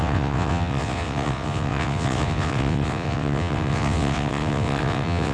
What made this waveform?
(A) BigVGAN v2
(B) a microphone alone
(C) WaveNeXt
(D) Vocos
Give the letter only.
C